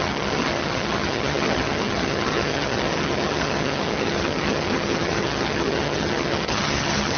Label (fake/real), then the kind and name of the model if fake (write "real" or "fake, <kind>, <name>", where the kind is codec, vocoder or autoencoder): fake, vocoder, HiFi-GAN